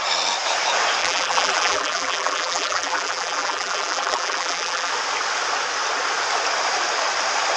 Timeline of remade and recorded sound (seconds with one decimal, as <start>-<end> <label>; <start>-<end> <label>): 0.0-1.0 recorded; 1.0-4.9 remade; 4.9-7.6 recorded